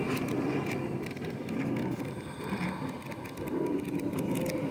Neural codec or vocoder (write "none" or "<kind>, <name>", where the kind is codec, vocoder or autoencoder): none